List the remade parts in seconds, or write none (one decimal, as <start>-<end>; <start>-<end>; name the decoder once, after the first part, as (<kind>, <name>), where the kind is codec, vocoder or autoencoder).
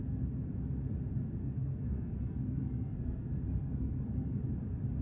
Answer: 1.4-4.4 (codec, SNAC)